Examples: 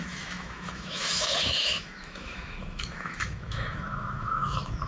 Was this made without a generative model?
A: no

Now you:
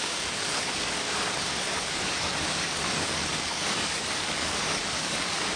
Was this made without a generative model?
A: no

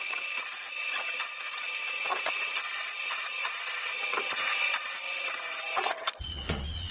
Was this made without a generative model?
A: no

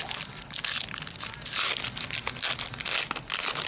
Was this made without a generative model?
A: yes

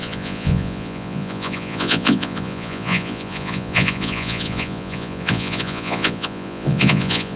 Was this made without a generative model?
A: no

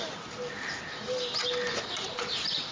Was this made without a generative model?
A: yes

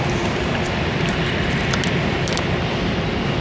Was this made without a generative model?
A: yes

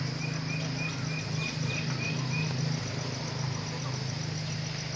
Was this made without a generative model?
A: yes